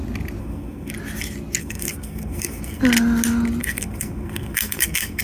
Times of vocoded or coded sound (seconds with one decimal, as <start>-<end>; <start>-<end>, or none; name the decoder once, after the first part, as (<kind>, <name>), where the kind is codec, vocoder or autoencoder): 0.4-0.9 (codec, SNAC); 1.6-2.8; 3.6-5.2